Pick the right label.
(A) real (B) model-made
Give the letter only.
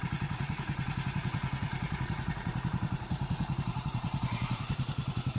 B